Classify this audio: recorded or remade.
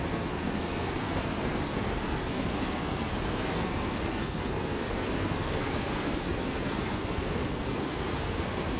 remade